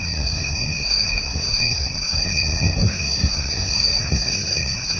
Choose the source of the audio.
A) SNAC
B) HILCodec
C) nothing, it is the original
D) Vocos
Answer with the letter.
A